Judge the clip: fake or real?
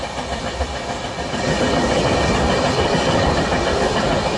real